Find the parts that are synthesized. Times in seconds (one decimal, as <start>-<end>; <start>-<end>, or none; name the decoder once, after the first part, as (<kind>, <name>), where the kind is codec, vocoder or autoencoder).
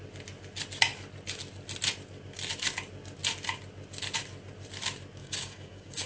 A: 5.2-6.1 (codec, DAC)